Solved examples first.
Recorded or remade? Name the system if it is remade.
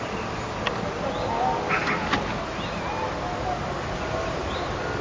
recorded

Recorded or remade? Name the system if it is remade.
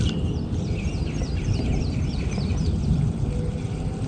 recorded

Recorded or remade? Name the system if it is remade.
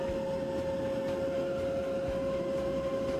recorded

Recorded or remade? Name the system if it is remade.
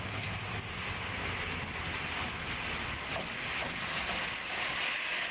recorded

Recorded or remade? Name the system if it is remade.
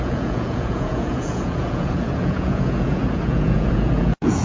remade, vocoder, Vocos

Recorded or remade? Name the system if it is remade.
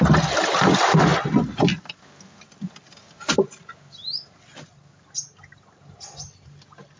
recorded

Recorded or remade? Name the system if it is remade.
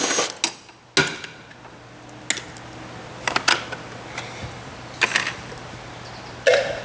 recorded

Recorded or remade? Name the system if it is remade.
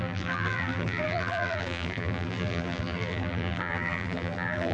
remade, vocoder, BigVGAN v2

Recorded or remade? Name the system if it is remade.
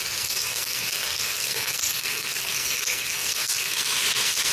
remade, codec, SNAC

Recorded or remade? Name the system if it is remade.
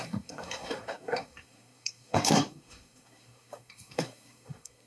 remade, codec, SNAC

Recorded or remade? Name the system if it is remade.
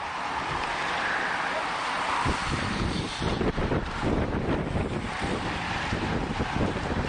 remade, vocoder, BigVGAN v2